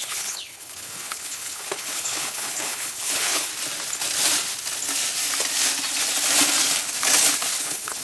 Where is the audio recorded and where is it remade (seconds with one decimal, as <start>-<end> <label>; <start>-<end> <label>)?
0.0-3.5 remade; 3.5-7.6 recorded; 7.6-8.0 remade